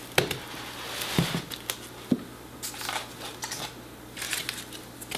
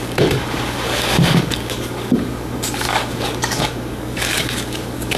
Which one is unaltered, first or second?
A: first